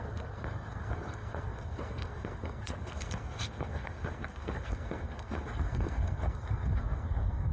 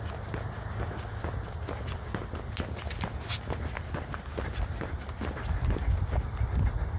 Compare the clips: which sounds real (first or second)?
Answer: second